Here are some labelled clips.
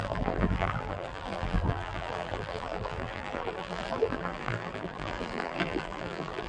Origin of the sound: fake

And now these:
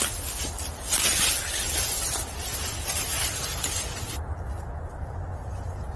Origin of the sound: real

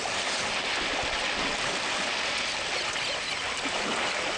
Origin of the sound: real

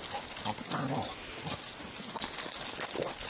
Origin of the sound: real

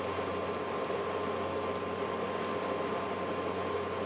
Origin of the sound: real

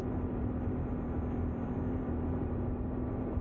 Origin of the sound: fake